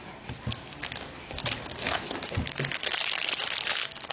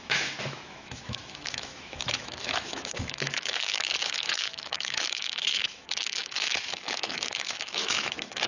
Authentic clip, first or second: first